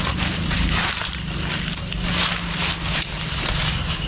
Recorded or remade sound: recorded